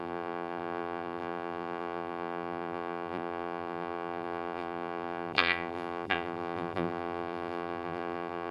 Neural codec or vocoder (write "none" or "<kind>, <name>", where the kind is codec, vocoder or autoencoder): vocoder, BigVGAN v2